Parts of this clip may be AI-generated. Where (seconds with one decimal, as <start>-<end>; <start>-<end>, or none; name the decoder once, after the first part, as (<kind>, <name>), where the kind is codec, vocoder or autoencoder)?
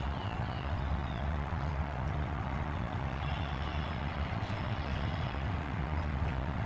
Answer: 0.0-6.7 (vocoder, WaveNeXt)